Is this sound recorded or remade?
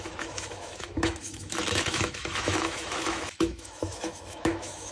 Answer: remade